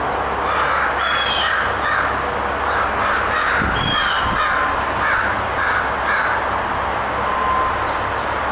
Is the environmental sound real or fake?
real